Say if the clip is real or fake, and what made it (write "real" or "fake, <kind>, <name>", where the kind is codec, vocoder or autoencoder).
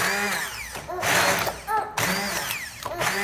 real